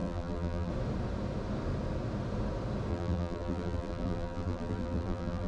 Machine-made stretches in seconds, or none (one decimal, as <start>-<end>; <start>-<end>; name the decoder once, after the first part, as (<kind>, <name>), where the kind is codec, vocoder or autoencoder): 0.0-0.7 (vocoder, BigVGAN v2); 2.9-5.5